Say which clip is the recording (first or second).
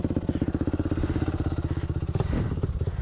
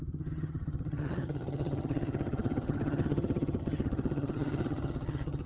first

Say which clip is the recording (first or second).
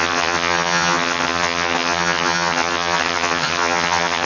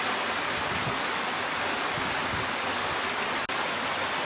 second